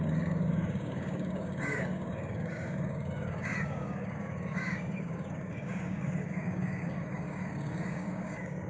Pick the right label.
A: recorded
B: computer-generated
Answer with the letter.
B